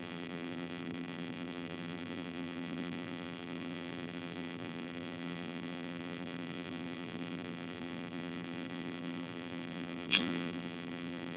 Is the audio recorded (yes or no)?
no